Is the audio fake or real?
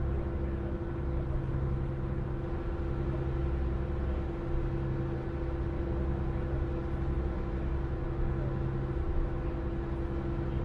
real